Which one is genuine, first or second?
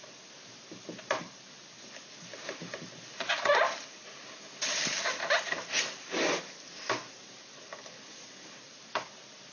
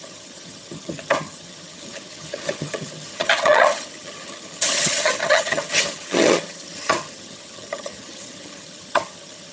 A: first